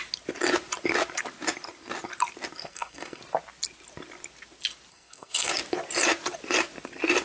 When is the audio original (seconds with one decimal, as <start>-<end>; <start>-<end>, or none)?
0.0-2.6; 3.2-4.9; 5.5-7.2